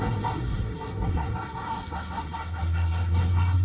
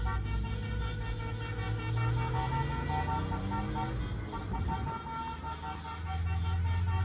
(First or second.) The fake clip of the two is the first